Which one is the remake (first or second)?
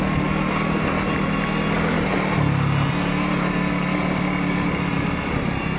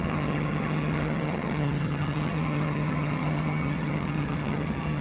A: second